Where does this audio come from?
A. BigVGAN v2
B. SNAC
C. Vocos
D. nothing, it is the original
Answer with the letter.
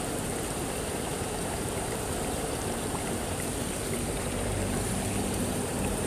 A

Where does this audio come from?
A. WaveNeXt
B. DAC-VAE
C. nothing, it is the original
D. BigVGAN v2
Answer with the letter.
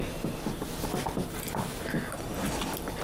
C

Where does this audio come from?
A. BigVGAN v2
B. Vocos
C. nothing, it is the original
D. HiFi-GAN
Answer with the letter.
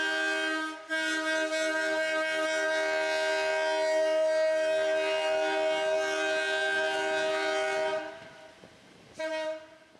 C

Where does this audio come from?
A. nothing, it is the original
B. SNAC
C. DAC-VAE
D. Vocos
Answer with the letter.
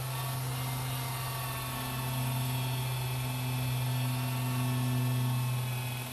A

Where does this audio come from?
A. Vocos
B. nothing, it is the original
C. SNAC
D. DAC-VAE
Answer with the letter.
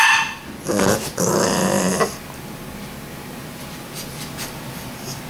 B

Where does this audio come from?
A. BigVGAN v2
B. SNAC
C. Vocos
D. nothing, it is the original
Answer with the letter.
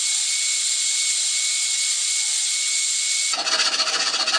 D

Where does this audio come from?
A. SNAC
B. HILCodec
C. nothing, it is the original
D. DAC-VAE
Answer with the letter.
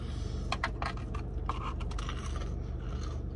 C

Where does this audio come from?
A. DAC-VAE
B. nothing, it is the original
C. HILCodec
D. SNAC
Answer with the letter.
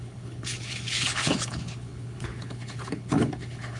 C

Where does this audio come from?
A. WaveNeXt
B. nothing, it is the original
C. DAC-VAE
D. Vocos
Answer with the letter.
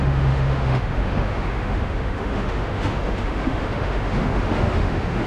C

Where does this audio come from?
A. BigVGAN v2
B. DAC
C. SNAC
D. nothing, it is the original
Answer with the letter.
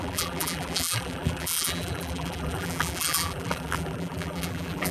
A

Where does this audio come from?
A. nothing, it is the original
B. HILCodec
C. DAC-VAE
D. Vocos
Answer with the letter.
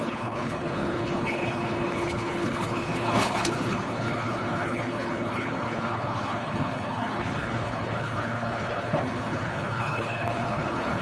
B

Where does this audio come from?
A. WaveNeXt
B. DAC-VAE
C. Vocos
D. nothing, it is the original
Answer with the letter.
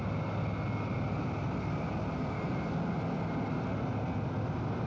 D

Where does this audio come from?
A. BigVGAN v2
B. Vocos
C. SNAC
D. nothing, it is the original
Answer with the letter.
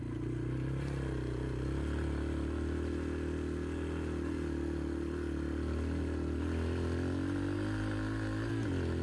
D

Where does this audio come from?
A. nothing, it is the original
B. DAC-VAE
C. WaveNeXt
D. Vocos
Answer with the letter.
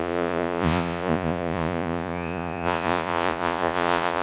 D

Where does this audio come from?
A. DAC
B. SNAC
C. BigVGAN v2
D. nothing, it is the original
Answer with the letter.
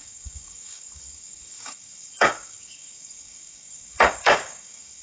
A